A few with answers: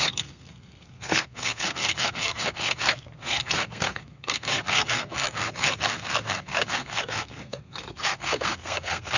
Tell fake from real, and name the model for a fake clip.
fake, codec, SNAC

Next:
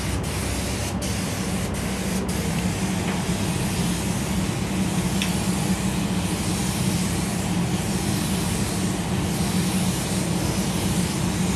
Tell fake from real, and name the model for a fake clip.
real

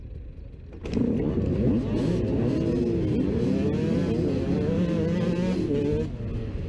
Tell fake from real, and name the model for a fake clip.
real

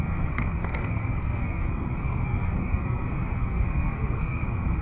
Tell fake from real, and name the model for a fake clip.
fake, codec, SNAC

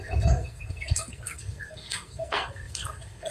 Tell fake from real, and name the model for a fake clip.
fake, codec, SNAC